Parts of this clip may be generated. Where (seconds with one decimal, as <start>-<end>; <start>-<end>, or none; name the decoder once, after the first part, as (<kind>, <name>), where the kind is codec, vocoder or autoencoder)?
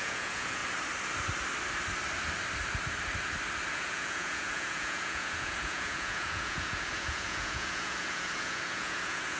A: 0.0-0.6 (vocoder, Vocos); 3.7-9.4